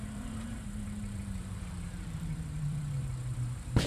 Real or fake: fake